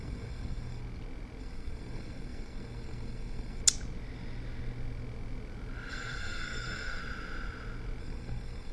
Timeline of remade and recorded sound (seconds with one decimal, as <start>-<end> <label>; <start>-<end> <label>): 0.0-0.8 remade; 0.8-1.4 recorded; 1.4-3.6 remade; 3.6-5.9 recorded; 5.9-7.0 remade; 7.0-8.0 recorded; 8.0-8.7 remade